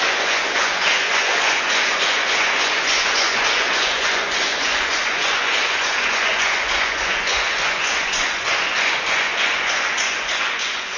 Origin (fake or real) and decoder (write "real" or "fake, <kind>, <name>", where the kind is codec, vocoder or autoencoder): fake, vocoder, Vocos